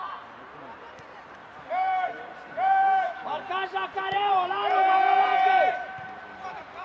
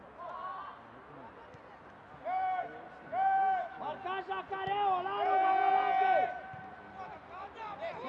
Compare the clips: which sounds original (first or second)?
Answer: second